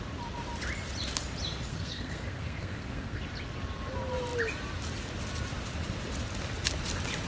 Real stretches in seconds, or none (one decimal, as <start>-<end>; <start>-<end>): 0.0-1.7; 3.2-7.3